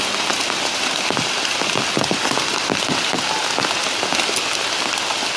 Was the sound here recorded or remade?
recorded